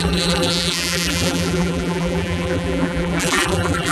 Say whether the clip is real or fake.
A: fake